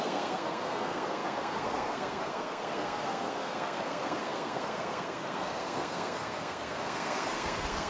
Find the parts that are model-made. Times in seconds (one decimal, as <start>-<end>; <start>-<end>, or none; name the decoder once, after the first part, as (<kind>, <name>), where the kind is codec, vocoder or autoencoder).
0.0-7.9 (codec, SNAC)

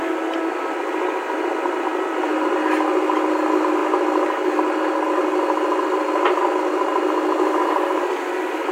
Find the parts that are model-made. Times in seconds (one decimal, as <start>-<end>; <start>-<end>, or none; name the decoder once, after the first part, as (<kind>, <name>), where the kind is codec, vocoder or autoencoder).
1.9-2.6 (vocoder, BigVGAN v2)

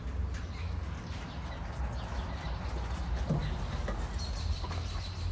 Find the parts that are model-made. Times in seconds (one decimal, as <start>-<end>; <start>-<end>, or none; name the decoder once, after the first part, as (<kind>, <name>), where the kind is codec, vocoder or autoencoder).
0.6-1.2 (codec, DAC); 3.4-4.1

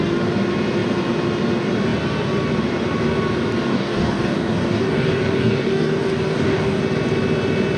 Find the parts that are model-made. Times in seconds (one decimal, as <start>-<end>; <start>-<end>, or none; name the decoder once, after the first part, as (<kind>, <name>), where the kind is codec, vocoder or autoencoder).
3.7-6.8 (codec, DAC)

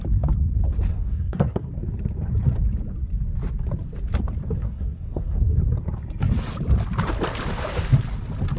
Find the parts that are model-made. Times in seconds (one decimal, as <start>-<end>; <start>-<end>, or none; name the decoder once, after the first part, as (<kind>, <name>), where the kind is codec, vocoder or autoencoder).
0.9-1.7 (codec, SNAC); 4.6-5.6

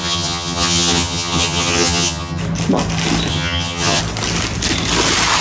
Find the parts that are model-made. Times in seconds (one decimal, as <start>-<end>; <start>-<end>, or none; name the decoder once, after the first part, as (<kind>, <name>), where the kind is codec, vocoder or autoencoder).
0.0-2.4 (vocoder, HiFi-GAN); 3.3-4.0

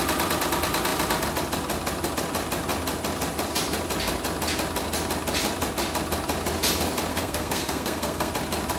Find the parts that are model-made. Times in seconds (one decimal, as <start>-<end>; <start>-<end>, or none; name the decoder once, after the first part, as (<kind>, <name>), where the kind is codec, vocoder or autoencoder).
7.1-8.3 (codec, SNAC)

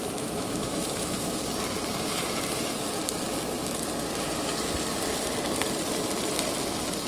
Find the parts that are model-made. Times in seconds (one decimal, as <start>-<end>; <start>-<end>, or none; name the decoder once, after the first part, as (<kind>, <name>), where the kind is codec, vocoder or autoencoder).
0.0-1.4 (autoencoder, DAC-VAE)